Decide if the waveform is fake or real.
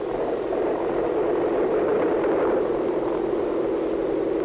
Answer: real